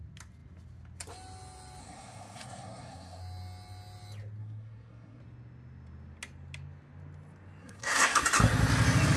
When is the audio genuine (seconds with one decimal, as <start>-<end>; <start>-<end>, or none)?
0.0-1.8; 3.2-4.4; 5.2-7.6; 8.2-9.2

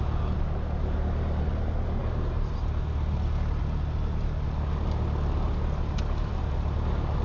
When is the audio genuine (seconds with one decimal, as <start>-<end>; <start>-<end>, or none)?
0.0-7.2

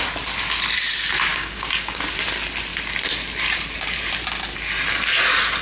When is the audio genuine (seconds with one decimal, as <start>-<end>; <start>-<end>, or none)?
0.0-1.3; 2.0-5.6

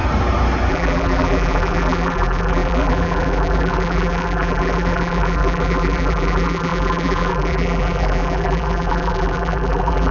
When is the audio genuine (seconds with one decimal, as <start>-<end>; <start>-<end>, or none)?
0.0-0.7

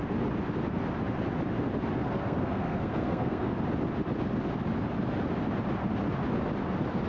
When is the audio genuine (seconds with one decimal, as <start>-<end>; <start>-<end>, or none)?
0.0-2.0; 3.5-7.1

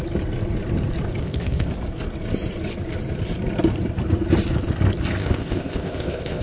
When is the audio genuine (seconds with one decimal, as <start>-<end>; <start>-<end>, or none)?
0.0-1.2; 1.7-5.2

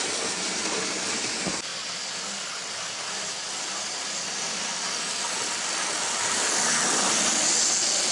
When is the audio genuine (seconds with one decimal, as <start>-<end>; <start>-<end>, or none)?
0.0-8.1

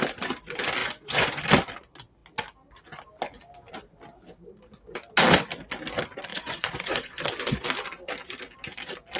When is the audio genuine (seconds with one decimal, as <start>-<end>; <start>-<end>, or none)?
0.0-0.8; 1.4-6.3; 7.2-9.2